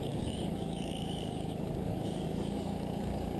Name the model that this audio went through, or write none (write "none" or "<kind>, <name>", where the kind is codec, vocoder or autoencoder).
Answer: codec, DAC